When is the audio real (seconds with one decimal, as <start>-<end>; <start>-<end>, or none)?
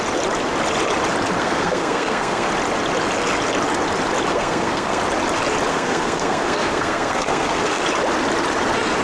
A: 0.0-1.4; 2.5-4.3; 5.0-5.7; 7.8-9.0